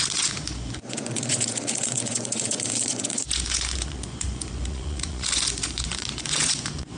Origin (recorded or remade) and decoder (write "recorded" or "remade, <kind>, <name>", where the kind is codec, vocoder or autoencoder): remade, vocoder, Vocos